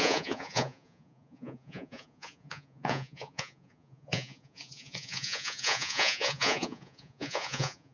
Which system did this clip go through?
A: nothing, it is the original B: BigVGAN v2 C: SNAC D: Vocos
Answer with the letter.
D